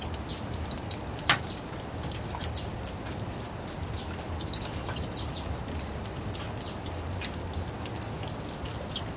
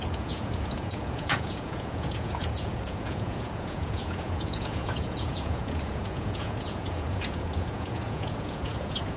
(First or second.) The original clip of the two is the first